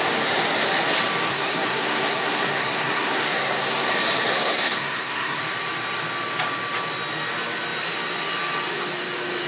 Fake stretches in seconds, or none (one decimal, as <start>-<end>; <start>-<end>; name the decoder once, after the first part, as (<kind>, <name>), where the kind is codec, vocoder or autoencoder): 1.3-3.9 (codec, SNAC); 4.3-5.4